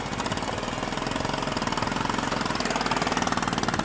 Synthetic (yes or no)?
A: no